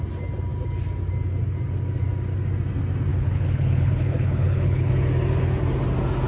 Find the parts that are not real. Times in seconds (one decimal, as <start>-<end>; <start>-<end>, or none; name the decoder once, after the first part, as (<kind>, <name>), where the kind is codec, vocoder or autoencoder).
3.1-4.9 (codec, HILCodec)